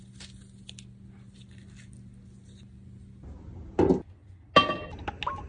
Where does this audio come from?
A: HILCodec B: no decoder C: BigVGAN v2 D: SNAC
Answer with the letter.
B